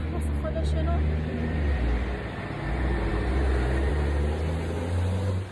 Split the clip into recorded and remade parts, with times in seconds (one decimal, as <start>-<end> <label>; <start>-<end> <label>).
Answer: 0.0-5.5 recorded